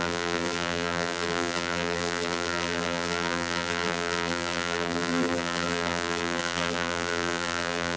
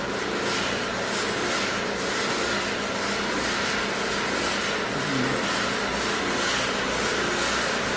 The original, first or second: second